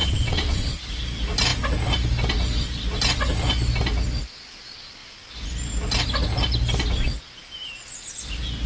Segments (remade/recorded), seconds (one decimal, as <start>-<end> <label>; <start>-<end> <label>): 0.0-0.8 remade; 0.8-8.7 recorded